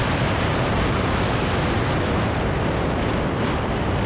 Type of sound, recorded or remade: remade